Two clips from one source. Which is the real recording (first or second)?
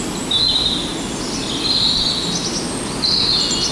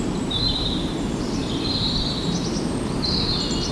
first